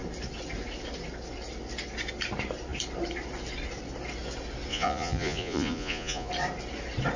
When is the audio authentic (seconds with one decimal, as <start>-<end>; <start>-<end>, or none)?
0.0-4.7; 6.3-7.2